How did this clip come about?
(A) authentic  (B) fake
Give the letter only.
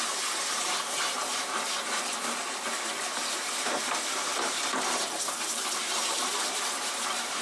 B